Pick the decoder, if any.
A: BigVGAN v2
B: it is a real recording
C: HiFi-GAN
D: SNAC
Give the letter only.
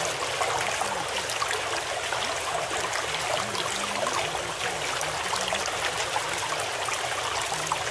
B